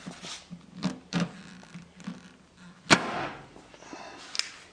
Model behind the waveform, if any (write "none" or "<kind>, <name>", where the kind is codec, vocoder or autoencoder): none